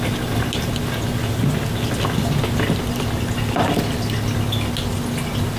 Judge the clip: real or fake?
real